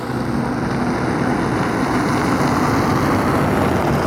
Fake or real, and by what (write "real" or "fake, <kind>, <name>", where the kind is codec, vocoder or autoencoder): real